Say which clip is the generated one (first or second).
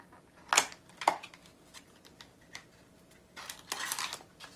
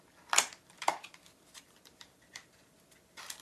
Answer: second